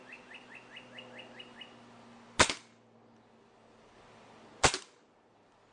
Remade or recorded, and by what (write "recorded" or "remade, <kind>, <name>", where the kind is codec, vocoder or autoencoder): recorded